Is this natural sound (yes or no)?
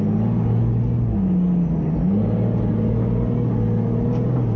yes